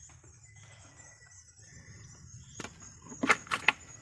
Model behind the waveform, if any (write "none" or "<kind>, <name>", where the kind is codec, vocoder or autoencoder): none